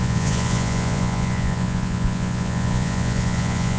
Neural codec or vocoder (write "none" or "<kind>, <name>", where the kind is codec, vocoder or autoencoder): vocoder, Vocos